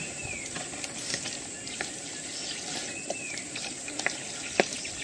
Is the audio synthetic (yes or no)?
no